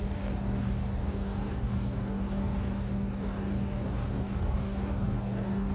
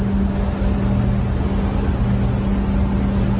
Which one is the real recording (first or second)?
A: second